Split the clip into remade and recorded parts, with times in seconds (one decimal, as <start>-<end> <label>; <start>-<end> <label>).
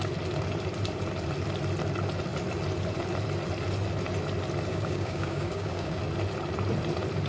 0.0-4.7 recorded; 4.7-6.0 remade; 6.0-7.3 recorded